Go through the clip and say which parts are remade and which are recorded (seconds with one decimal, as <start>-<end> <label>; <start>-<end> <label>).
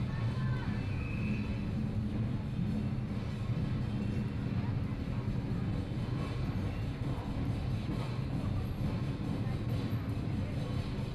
0.0-6.6 recorded; 6.6-10.6 remade; 10.6-11.1 recorded